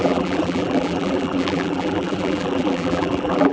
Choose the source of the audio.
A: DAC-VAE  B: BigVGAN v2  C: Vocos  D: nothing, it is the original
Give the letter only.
B